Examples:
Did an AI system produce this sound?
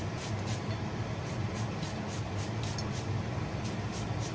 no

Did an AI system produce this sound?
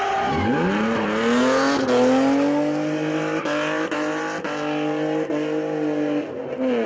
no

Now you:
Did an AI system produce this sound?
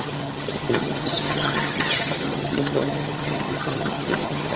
yes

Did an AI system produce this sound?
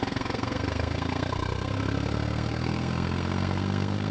yes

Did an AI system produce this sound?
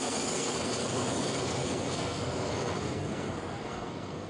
yes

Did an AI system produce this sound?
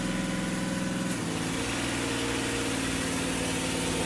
no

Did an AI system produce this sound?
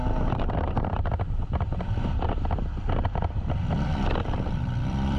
yes